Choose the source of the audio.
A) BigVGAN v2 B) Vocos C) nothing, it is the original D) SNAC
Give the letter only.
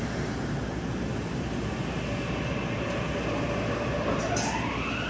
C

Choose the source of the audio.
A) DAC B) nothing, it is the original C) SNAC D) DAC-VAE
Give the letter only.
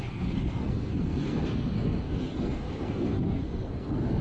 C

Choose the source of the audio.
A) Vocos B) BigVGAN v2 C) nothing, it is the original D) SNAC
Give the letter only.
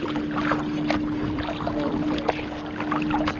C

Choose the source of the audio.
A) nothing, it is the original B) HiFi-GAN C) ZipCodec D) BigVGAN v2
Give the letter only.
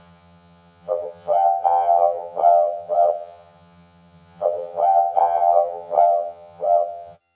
B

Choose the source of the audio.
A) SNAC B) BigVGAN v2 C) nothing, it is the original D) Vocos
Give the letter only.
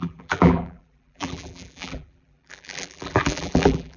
B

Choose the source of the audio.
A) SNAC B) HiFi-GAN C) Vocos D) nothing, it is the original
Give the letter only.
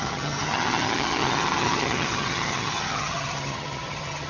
B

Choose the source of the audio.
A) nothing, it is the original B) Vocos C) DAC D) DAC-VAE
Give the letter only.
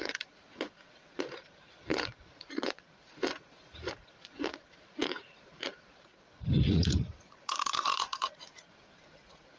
B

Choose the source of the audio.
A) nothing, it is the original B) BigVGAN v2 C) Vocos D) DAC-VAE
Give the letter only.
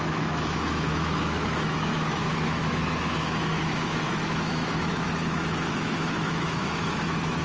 D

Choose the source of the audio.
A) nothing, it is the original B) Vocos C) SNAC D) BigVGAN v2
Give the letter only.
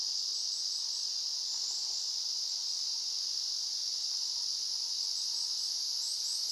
A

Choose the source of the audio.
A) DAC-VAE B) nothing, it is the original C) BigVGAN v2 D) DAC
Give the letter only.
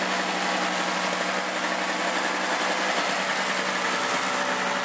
B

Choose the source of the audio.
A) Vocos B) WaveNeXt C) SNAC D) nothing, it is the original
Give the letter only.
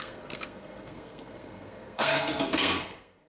C